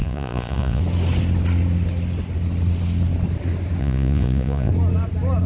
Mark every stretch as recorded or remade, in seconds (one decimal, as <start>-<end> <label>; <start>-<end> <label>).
0.0-0.8 remade; 0.8-3.8 recorded; 3.8-4.7 remade; 4.7-5.5 recorded